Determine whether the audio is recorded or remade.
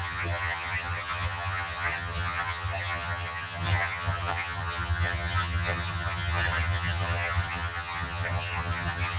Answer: remade